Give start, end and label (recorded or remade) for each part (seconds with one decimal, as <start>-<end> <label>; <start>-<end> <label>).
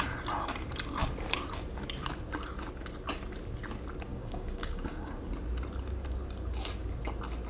0.0-4.1 recorded; 4.1-5.2 remade; 5.2-7.5 recorded